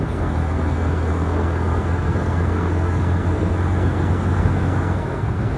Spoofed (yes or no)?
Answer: yes